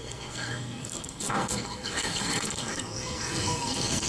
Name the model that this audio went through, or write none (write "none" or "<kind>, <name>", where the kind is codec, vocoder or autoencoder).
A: codec, SNAC